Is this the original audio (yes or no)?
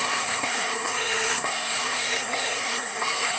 no